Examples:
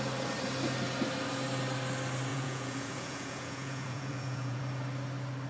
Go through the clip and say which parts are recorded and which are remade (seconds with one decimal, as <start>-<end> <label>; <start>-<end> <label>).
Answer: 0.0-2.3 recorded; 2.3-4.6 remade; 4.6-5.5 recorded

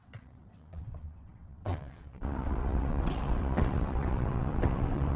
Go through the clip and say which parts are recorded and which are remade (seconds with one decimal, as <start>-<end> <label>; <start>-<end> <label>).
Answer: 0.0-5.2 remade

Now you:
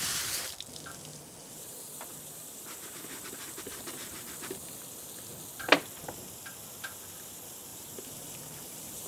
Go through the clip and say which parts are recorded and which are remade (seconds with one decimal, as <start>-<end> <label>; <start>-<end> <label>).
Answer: 0.0-1.1 recorded; 1.1-4.6 remade; 4.6-7.7 recorded; 7.7-9.1 remade

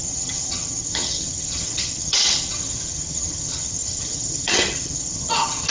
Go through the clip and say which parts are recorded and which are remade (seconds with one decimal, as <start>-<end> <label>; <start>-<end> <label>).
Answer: 0.0-5.7 remade

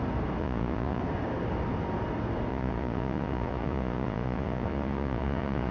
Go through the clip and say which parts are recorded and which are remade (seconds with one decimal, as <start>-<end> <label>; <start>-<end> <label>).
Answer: 0.0-0.4 recorded; 0.4-1.0 remade; 1.0-2.5 recorded; 2.5-5.7 remade